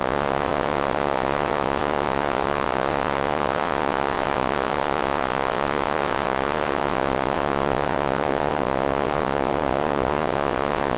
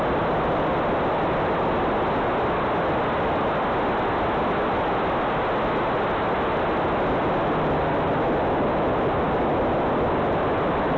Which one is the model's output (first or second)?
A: first